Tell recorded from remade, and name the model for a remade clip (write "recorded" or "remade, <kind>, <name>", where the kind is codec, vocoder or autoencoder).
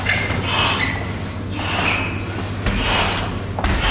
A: recorded